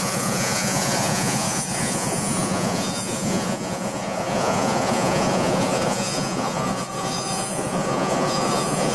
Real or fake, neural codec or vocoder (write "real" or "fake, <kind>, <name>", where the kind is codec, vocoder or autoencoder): fake, vocoder, Vocos